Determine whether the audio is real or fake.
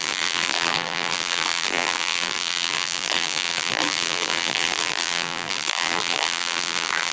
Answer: fake